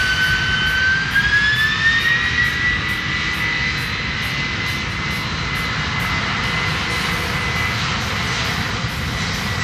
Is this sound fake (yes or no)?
no